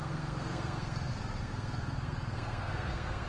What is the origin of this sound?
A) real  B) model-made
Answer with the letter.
B